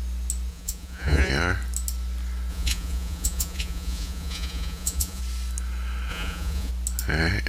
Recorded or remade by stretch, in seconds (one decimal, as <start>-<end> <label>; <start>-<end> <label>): 0.0-0.5 recorded; 0.5-1.3 remade; 1.3-2.5 recorded; 2.5-5.2 remade; 5.2-6.1 recorded; 6.1-6.7 remade; 6.7-7.5 recorded